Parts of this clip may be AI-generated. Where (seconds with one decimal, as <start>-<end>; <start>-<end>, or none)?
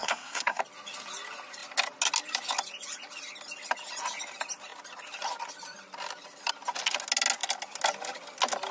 0.0-0.6